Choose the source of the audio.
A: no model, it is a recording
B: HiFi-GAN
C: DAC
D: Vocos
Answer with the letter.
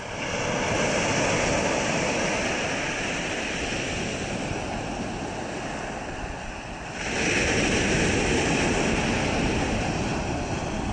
A